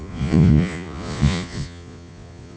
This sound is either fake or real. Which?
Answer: fake